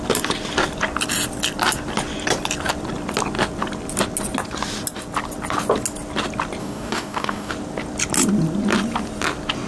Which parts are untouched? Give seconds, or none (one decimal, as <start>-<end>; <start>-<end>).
0.0-6.6; 7.5-9.7